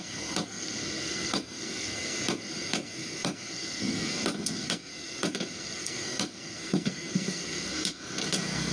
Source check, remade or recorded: remade